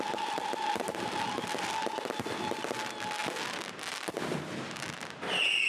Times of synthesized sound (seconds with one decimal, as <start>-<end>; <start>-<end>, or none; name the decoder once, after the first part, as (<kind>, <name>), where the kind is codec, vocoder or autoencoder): none